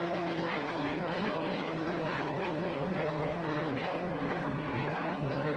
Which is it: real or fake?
fake